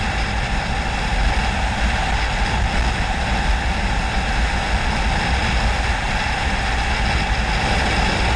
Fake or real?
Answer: real